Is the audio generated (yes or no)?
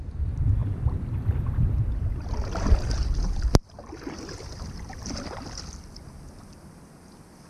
yes